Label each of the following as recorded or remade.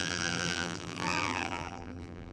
remade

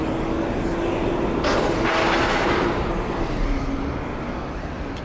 recorded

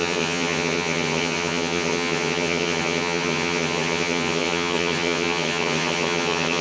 remade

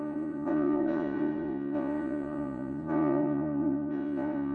remade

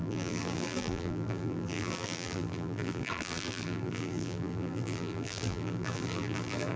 remade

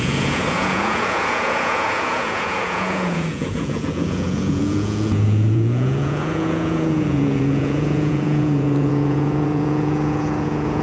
remade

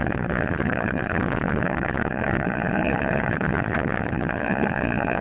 remade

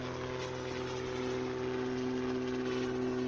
recorded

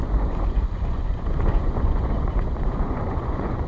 remade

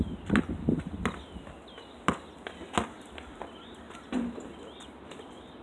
recorded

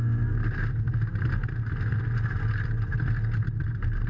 recorded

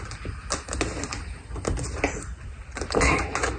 recorded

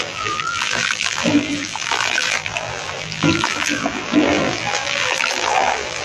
remade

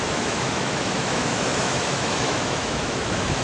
remade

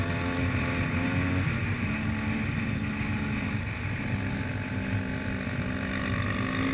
recorded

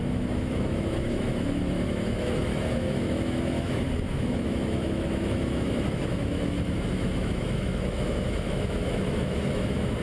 remade